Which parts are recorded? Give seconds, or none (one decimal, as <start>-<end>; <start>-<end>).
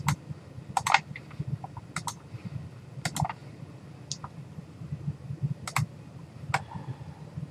0.0-7.5